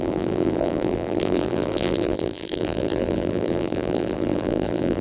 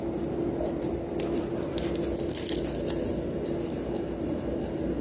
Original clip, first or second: second